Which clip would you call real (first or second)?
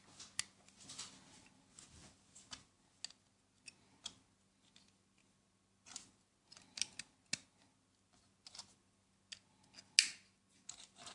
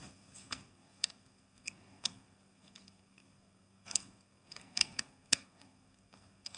first